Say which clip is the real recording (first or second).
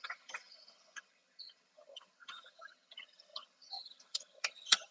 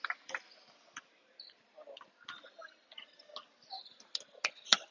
second